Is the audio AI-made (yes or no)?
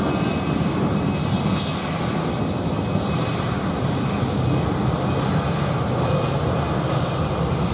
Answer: no